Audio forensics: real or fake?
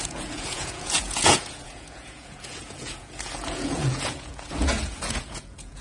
fake